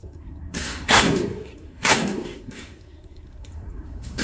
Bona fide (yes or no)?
no